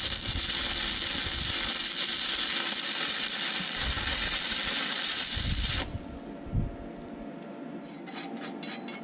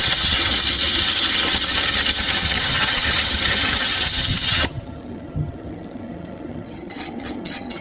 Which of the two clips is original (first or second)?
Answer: first